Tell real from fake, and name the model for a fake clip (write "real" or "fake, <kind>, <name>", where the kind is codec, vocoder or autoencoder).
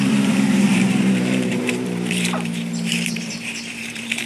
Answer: fake, vocoder, BigVGAN v2